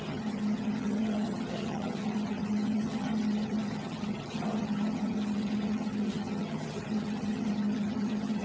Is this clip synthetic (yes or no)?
yes